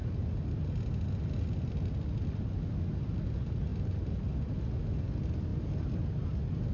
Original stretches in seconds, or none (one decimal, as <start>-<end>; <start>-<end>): 0.0-6.7